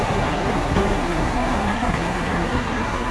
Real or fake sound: fake